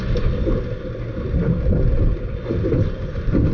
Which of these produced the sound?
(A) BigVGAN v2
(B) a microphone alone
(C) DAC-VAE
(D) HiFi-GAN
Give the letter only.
B